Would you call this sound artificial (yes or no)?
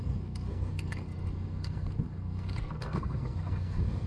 yes